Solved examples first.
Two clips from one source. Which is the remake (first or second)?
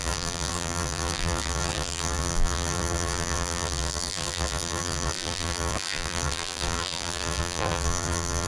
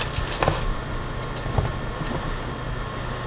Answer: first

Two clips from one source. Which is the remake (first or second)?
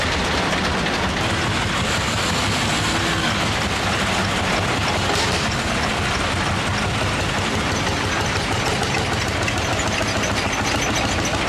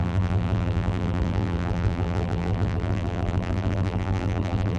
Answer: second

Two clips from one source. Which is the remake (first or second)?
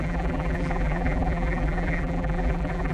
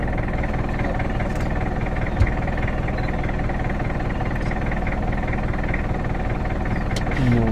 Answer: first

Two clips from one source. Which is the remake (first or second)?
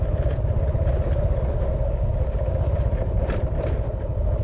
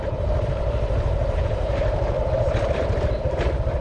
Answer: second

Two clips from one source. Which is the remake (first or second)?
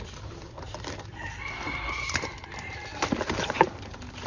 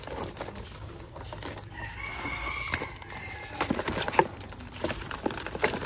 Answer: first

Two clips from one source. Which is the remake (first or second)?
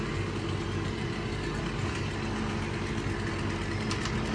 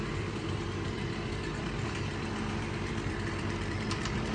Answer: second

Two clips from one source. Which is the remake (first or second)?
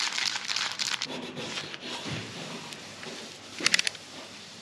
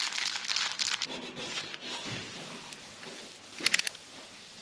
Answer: first